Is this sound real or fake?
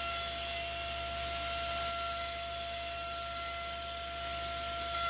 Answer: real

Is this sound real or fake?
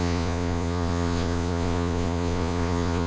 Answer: fake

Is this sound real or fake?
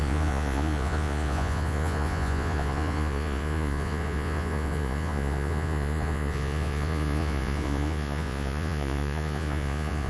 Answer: fake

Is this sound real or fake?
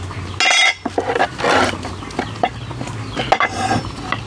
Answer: real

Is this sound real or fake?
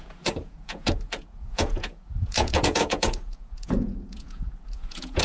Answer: fake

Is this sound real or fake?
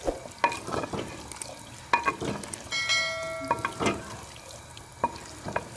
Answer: real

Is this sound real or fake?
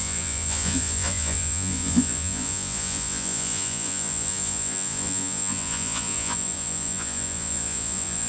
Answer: fake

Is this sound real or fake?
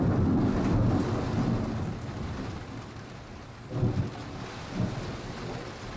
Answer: real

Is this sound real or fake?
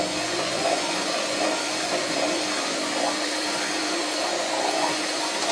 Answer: fake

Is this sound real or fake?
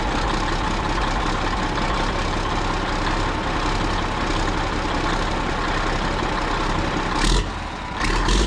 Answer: real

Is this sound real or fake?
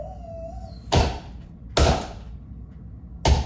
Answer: real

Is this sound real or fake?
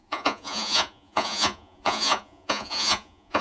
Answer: fake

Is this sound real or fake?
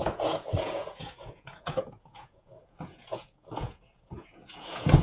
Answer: fake